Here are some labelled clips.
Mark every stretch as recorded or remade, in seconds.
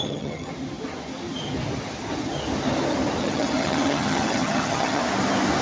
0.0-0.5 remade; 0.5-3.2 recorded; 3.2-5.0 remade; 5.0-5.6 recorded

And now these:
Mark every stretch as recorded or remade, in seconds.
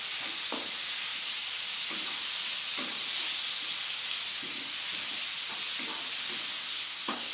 0.0-6.7 recorded; 6.7-7.3 remade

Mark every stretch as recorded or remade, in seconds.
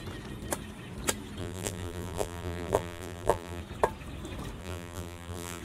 0.0-1.4 recorded; 1.4-3.6 remade; 3.6-4.6 recorded; 4.6-5.6 remade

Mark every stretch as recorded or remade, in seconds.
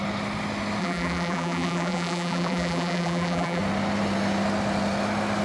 0.0-0.8 recorded; 0.8-3.6 remade; 3.6-5.4 recorded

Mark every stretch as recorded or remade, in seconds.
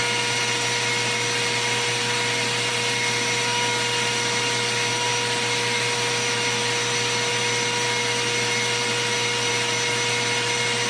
0.0-10.9 recorded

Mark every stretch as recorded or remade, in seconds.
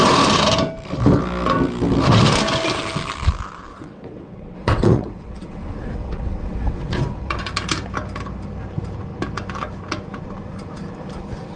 0.0-3.7 recorded; 3.7-7.4 remade; 7.4-11.6 recorded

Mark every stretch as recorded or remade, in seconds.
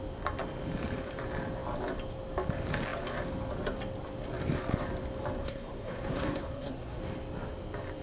0.0-5.4 recorded; 5.4-7.0 remade; 7.0-8.0 recorded